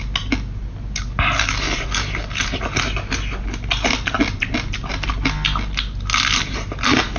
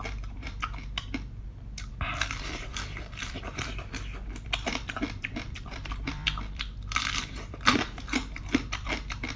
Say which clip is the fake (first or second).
second